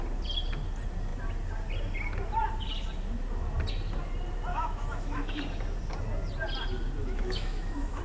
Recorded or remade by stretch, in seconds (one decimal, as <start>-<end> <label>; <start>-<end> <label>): 0.0-4.5 recorded; 4.5-5.4 remade; 5.4-7.0 recorded; 7.0-8.0 remade

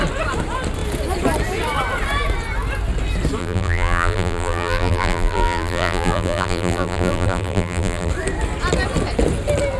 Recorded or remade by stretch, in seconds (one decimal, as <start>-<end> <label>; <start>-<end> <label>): 0.0-3.4 recorded; 3.4-8.1 remade; 8.1-9.8 recorded